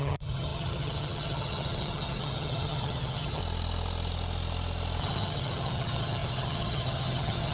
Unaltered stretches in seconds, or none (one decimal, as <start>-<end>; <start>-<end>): 3.4-5.0